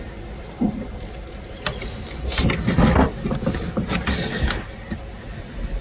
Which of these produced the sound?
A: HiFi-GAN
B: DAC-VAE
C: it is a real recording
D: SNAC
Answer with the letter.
C